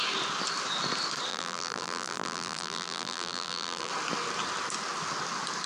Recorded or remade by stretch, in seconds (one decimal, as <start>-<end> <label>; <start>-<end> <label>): 0.0-1.3 recorded; 1.3-3.9 remade; 3.9-5.7 recorded